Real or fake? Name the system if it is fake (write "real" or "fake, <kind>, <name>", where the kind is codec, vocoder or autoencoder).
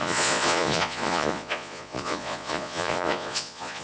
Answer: fake, vocoder, Vocos